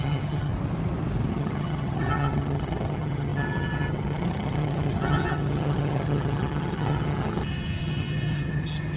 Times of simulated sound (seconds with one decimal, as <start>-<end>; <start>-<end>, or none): 0.0-0.5; 1.3-9.0